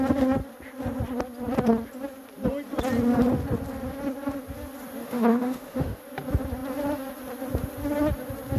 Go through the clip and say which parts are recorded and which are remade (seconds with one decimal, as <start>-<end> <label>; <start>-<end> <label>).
0.0-5.0 recorded; 5.0-6.0 remade; 6.0-8.6 recorded